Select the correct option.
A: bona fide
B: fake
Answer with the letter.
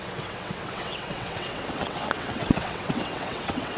B